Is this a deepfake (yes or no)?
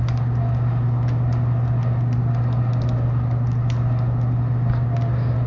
no